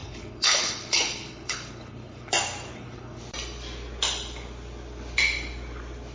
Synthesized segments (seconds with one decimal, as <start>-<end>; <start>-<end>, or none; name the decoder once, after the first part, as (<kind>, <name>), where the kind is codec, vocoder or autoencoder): 0.0-2.3 (codec, HILCodec); 2.7-3.2